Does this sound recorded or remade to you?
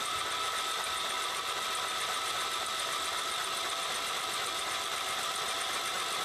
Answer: remade